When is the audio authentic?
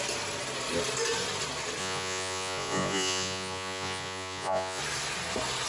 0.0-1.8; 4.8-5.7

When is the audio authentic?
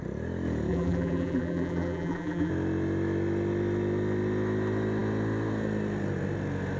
0.0-0.7; 2.5-6.8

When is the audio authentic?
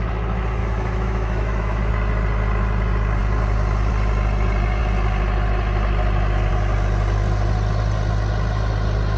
0.0-0.6; 1.9-9.2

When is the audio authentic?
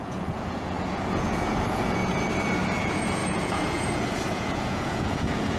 2.0-2.8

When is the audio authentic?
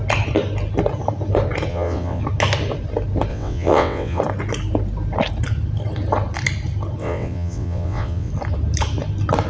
0.0-1.7; 2.2-3.3; 4.2-7.0; 8.3-9.5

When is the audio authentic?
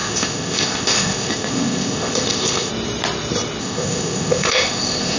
2.7-3.6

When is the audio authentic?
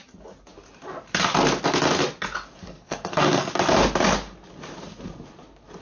0.0-2.6; 3.5-5.8